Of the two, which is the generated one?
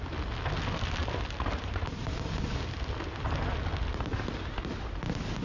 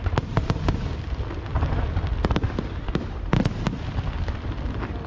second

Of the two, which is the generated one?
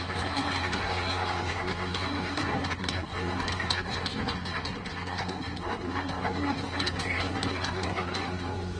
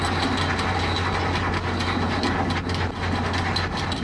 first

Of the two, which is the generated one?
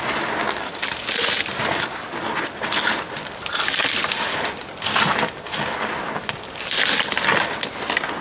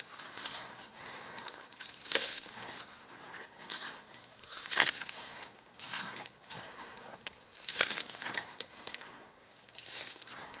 second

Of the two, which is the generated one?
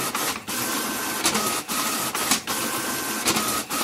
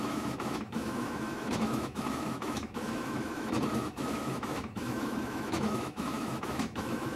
second